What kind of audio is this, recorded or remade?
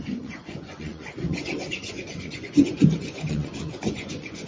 remade